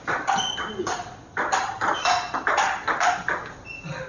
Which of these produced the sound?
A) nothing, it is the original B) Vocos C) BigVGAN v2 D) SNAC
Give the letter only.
A